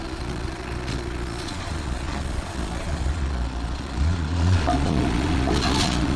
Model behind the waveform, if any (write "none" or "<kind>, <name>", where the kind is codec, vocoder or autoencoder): vocoder, Vocos